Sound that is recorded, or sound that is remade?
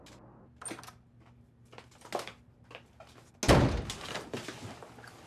recorded